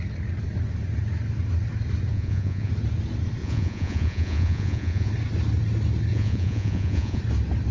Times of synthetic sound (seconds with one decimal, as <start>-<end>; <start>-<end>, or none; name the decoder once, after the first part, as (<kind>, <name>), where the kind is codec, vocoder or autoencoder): 2.1-2.7 (vocoder, Vocos); 3.4-5.1; 6.1-7.2